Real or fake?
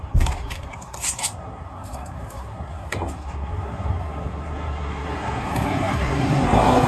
fake